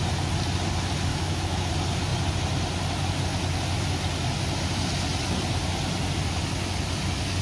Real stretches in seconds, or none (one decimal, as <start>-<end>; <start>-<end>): 0.0-1.1; 1.7-7.4